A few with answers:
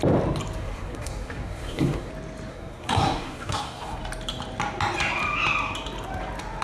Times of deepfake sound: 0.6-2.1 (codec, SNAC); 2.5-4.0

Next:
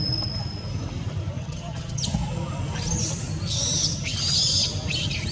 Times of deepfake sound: 1.4-2.0 (vocoder, HiFi-GAN)

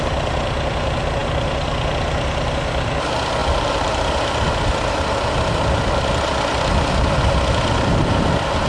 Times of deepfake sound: none

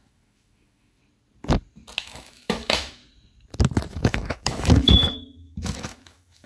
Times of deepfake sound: 0.0-1.0 (autoencoder, DAC-VAE); 2.0-3.0; 3.9-6.5

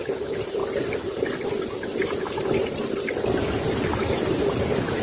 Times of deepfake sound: 0.0-0.6 (vocoder, BigVGAN v2); 3.6-5.0

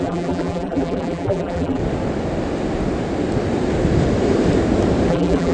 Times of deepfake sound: 0.0-1.8 (vocoder, BigVGAN v2); 5.1-5.5

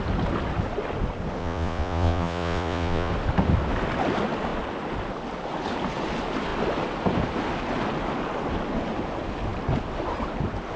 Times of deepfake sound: 1.4-3.1 (vocoder, Vocos)